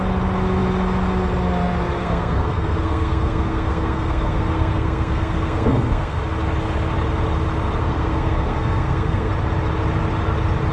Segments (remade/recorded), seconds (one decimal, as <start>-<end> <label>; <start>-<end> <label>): 0.0-2.0 recorded; 2.0-6.2 remade; 6.2-7.8 recorded; 7.8-9.3 remade; 9.3-10.7 recorded